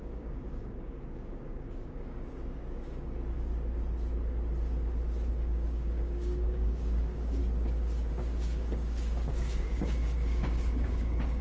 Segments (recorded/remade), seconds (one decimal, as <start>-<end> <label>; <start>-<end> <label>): 0.0-3.5 remade; 3.5-5.3 recorded; 5.3-7.4 remade; 7.4-8.1 recorded; 8.1-11.4 remade